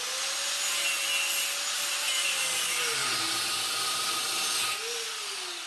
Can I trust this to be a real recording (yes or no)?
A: yes